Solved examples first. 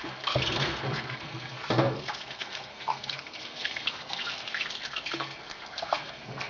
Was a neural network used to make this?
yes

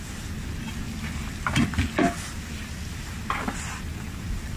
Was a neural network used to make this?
no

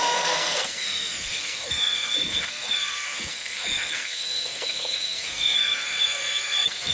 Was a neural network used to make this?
yes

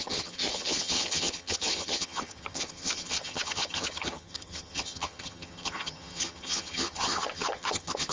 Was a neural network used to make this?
yes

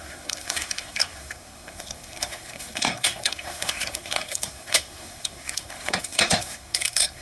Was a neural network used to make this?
yes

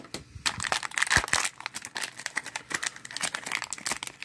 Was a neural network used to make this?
no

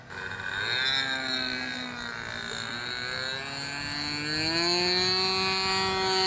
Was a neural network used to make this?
no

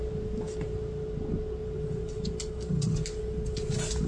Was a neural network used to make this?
no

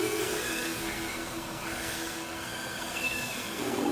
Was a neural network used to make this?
yes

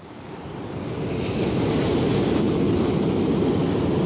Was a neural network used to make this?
no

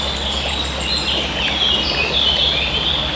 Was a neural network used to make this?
no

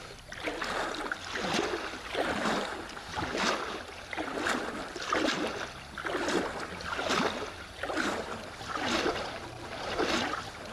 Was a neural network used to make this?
no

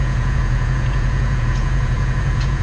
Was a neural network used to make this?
yes